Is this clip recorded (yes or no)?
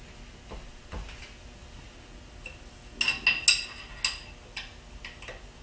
yes